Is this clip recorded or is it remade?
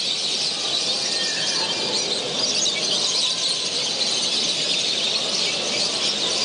recorded